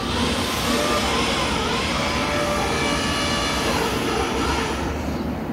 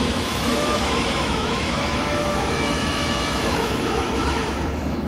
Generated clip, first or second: second